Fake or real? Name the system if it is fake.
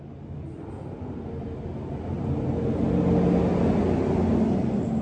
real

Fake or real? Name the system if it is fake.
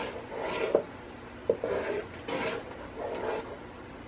real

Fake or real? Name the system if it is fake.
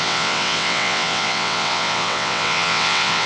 fake, vocoder, WaveNeXt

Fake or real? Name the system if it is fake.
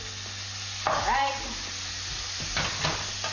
real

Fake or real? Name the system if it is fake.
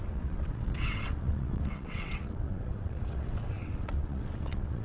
fake, vocoder, WaveNeXt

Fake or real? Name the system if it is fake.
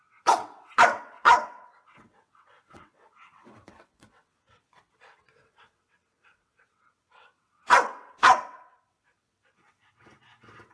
fake, vocoder, WaveNeXt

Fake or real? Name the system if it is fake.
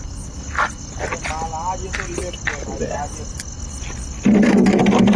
real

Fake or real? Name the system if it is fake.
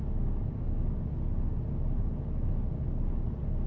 real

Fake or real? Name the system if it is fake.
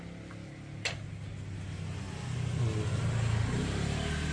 real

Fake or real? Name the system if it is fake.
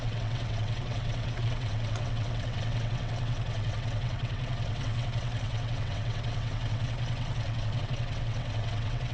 fake, vocoder, WaveNeXt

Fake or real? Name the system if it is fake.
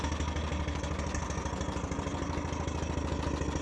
real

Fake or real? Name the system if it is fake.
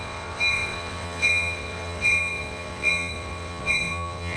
fake, vocoder, WaveNeXt